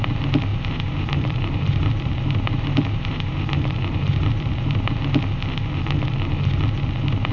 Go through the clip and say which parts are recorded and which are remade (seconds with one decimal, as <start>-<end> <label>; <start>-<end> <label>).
0.0-0.5 recorded; 0.5-4.9 remade; 4.9-7.3 recorded